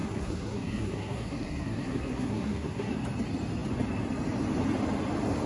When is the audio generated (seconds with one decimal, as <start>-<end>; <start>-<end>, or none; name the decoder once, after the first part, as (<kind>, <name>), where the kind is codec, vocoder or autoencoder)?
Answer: 0.0-2.9 (codec, SNAC)

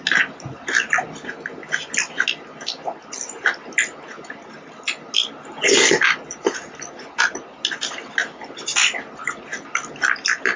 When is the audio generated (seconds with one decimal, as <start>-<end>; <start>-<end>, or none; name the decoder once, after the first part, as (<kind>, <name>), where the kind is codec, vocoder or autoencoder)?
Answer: none

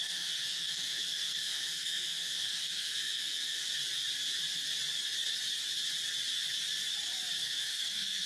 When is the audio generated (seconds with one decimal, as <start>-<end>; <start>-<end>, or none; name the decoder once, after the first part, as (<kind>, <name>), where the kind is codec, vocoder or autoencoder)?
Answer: 0.0-3.7 (codec, SNAC); 7.4-8.3

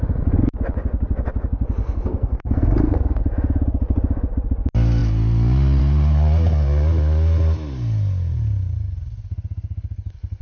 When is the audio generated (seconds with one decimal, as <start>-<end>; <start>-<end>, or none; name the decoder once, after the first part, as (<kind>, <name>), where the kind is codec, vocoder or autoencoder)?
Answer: 1.8-3.2 (codec, SNAC)

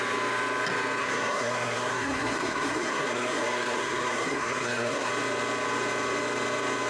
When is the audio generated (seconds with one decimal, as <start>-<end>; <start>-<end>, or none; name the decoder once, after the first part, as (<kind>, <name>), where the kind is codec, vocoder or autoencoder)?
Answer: 1.0-5.1 (codec, SNAC)

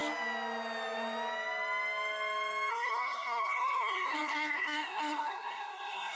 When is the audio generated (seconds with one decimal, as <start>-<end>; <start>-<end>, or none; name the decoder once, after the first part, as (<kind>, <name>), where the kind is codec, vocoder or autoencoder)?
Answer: 2.7-6.2 (codec, SNAC)

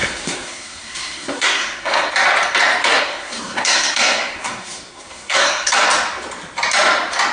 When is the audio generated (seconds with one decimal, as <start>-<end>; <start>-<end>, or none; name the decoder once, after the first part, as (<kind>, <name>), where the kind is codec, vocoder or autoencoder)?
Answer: 0.0-2.1 (codec, SNAC); 2.9-5.7

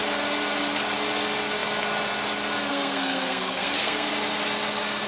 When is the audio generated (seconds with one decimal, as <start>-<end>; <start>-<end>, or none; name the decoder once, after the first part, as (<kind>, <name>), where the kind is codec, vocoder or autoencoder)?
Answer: 2.7-4.1 (codec, SNAC)